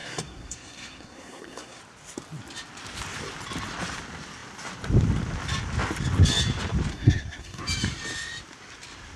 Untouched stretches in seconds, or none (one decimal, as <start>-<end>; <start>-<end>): 1.8-6.9; 7.6-9.2